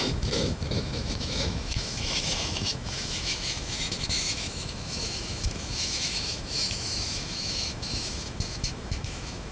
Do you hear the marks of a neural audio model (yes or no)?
yes